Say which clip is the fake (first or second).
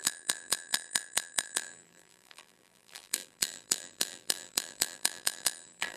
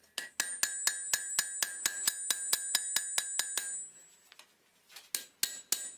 first